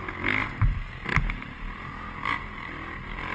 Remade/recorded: recorded